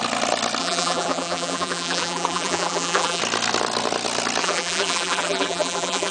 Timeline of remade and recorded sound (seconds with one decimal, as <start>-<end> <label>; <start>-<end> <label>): 0.0-0.6 recorded; 0.6-3.2 remade; 3.2-4.4 recorded; 4.4-6.1 remade